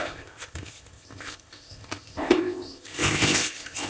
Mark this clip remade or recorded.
remade